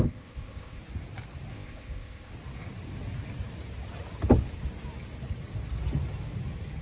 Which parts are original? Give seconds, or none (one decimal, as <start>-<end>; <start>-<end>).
0.8-1.5; 2.3-6.8